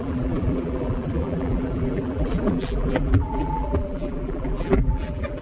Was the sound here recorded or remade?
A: remade